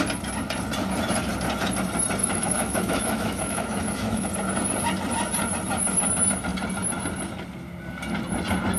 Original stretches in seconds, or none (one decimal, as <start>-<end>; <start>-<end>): 0.0-2.2; 4.3-8.8